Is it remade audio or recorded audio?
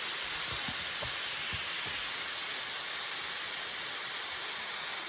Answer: recorded